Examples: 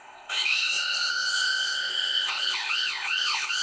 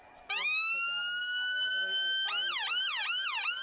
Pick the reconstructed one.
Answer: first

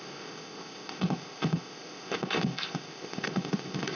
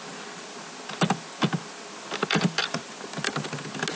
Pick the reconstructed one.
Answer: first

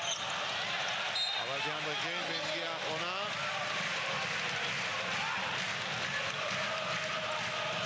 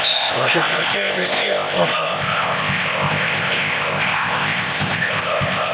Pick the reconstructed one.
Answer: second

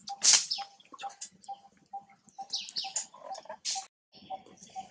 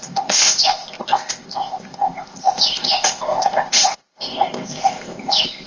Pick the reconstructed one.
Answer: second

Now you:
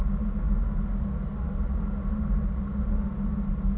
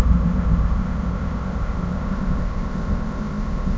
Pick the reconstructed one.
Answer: second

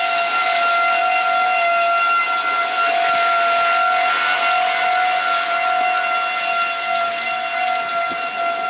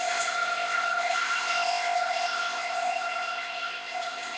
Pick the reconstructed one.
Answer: second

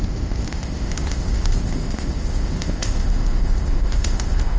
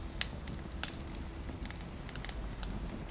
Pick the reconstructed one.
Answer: first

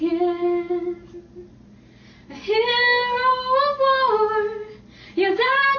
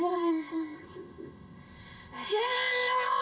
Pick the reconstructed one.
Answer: second